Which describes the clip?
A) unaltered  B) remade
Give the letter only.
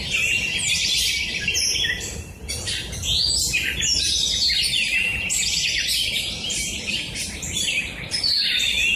A